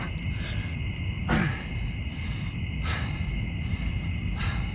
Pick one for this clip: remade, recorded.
recorded